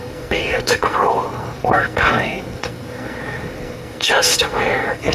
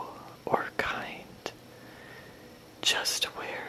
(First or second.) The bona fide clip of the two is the second